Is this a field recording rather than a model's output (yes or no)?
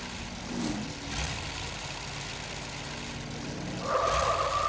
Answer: yes